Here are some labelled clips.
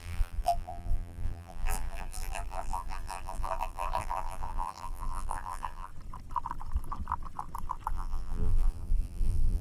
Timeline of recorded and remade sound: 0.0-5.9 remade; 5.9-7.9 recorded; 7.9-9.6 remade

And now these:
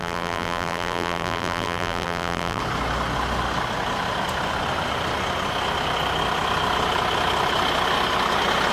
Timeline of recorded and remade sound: 0.0-2.6 remade; 2.6-8.7 recorded

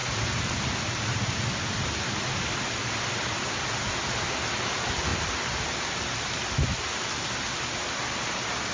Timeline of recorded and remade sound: 0.0-8.7 recorded

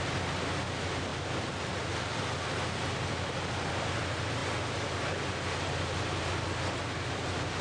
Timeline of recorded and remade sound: 0.0-7.6 recorded